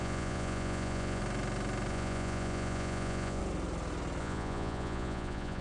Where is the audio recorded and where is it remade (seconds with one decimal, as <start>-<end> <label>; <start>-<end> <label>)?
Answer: 0.0-1.2 remade; 1.2-1.9 recorded; 1.9-3.4 remade; 3.4-4.2 recorded; 4.2-5.6 remade